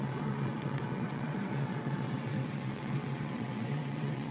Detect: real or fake fake